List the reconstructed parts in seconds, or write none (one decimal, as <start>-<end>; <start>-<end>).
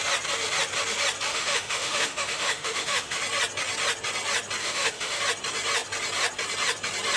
1.3-3.2; 4.6-5.2